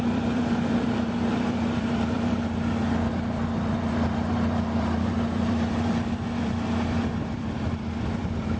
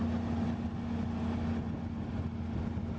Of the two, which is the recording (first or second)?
second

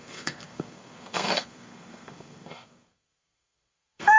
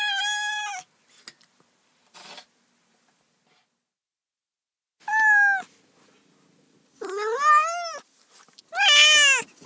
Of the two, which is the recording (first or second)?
second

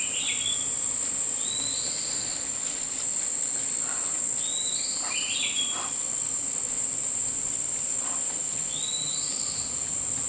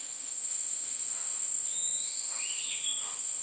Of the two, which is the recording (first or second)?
first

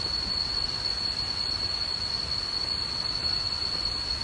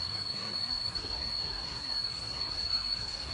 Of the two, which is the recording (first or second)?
first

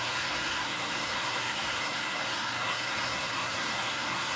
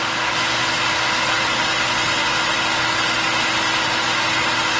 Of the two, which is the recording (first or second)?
second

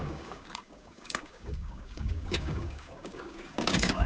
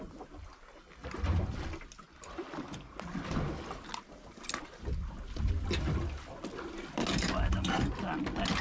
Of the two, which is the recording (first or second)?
second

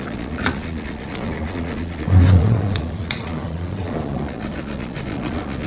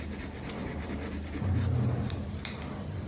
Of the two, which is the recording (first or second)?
second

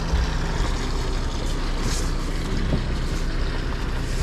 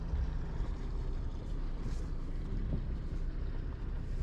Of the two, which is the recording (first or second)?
first